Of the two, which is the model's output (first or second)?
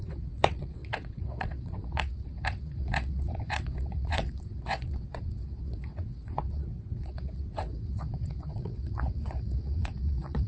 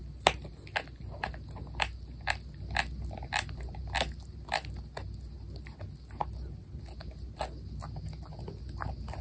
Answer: first